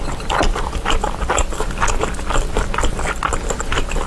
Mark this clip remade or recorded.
recorded